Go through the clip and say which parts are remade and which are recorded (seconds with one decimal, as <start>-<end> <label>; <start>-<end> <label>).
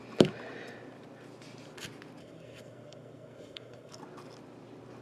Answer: 0.0-2.2 recorded; 2.2-4.0 remade; 4.0-5.0 recorded